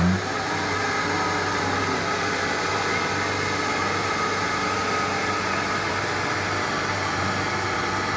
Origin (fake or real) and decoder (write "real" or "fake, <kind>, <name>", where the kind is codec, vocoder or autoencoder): real